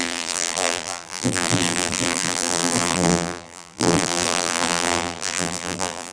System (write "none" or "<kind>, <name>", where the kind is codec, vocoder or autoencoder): vocoder, BigVGAN v2